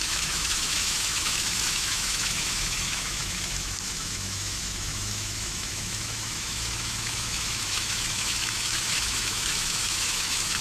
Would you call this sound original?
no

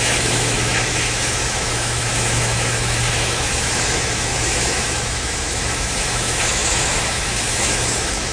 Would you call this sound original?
no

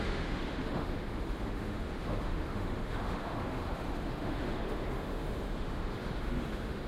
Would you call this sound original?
no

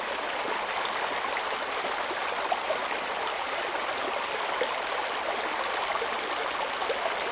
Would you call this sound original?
yes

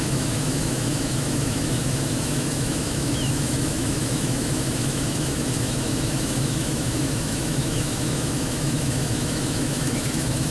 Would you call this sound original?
no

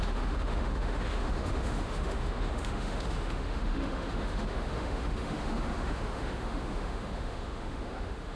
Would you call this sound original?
no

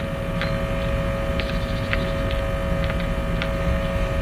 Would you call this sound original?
yes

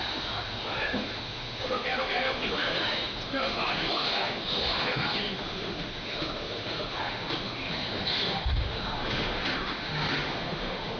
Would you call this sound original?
no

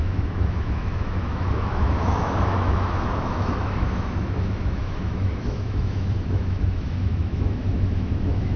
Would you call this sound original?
no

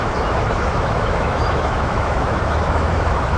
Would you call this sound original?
no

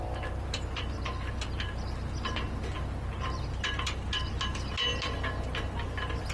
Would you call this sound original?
yes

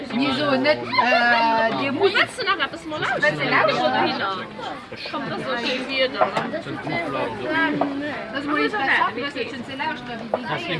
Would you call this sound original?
yes